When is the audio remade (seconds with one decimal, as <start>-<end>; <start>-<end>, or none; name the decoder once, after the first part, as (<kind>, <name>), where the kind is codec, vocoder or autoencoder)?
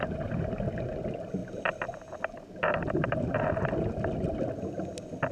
none